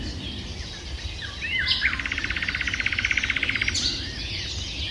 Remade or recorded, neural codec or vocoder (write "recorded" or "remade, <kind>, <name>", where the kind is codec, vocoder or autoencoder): remade, vocoder, BigVGAN v2